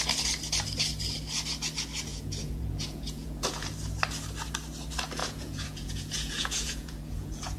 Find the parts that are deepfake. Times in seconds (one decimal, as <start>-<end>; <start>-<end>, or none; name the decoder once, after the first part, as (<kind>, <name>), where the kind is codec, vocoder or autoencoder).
2.1-3.7 (vocoder, Vocos); 5.2-7.6